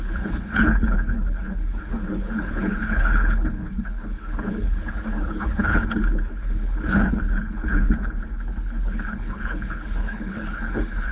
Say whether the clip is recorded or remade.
remade